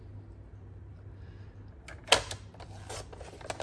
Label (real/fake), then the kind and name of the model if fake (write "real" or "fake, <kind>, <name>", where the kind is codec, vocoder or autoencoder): real